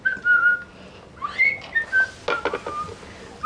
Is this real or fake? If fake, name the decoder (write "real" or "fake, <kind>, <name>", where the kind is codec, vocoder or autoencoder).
real